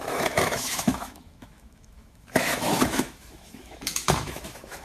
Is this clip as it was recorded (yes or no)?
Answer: no